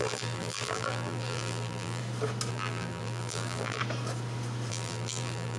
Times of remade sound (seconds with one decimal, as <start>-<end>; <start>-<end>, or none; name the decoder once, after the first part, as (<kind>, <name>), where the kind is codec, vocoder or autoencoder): 0.0-2.0 (vocoder, BigVGAN v2); 2.5-3.8; 4.7-5.6